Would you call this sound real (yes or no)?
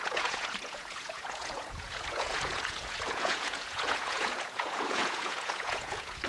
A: no